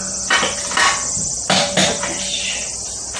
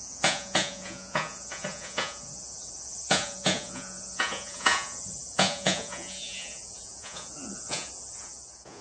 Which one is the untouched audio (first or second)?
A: first